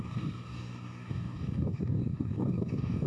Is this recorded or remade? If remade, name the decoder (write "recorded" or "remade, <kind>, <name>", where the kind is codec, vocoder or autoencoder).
remade, codec, DAC